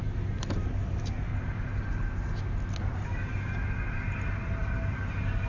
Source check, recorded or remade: recorded